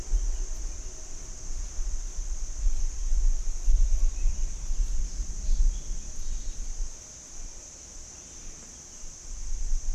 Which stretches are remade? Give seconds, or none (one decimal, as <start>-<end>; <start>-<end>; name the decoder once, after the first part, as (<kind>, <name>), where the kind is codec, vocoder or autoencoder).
none